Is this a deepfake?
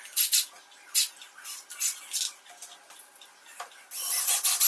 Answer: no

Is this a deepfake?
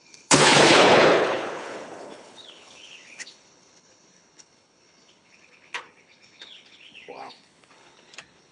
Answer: yes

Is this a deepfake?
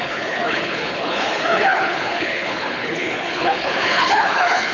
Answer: yes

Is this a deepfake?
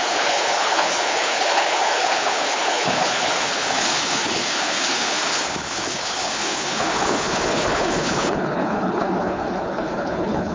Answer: yes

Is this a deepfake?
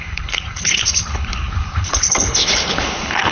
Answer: yes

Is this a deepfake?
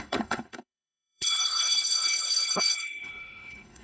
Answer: yes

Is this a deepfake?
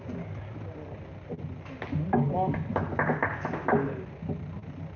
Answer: no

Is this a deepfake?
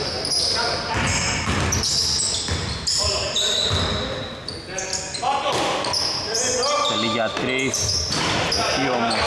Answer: no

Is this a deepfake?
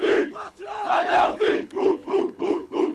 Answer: yes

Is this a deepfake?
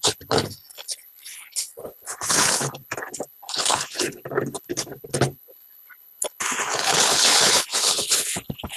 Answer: yes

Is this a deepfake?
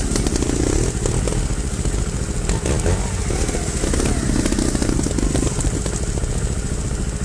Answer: no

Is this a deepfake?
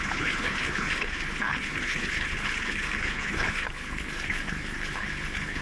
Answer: yes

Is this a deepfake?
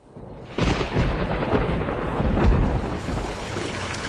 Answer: yes